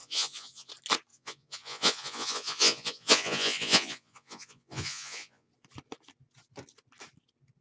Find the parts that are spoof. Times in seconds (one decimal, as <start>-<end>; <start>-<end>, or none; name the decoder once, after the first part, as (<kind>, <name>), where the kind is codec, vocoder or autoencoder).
0.0-0.7 (vocoder, Vocos); 1.1-5.5